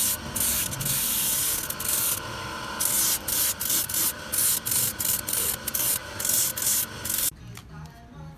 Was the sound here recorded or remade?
recorded